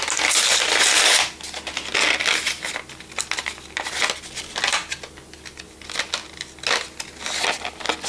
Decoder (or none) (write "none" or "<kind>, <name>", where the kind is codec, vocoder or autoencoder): none